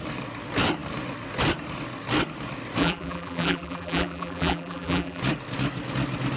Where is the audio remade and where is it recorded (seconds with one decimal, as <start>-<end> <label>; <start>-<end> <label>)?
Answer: 0.0-2.8 recorded; 2.8-5.2 remade; 5.2-6.4 recorded